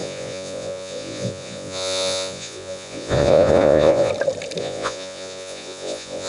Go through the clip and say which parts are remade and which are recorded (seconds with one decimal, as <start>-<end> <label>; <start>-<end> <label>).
0.0-4.1 remade; 4.1-4.6 recorded; 4.6-6.3 remade